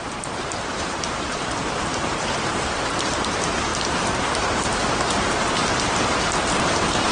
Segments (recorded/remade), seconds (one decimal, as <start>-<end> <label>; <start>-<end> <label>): 0.0-3.7 remade; 3.7-4.2 recorded; 4.2-5.6 remade; 5.6-6.6 recorded; 6.6-7.1 remade

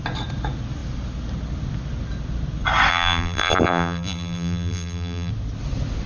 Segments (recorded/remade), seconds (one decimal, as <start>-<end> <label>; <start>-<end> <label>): 0.0-2.9 recorded; 2.9-5.3 remade; 5.3-6.1 recorded